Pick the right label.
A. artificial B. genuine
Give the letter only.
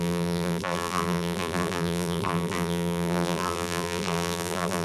A